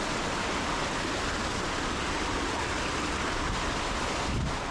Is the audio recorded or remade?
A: recorded